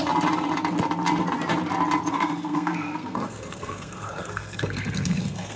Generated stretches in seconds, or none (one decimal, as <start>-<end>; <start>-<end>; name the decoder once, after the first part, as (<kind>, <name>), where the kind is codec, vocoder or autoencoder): 2.1-5.6 (codec, SNAC)